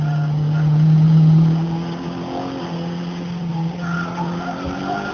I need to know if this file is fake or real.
real